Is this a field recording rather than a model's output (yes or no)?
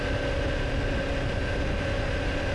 yes